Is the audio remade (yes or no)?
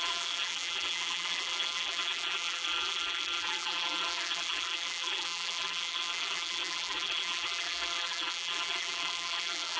yes